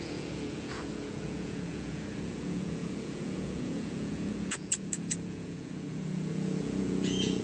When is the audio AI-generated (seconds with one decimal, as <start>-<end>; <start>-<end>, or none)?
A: 0.0-7.4